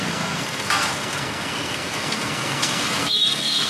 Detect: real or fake fake